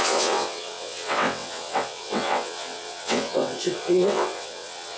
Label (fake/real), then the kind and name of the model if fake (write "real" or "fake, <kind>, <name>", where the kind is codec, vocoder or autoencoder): fake, vocoder, WaveNeXt